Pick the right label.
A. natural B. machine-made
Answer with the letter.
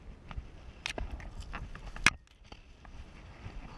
A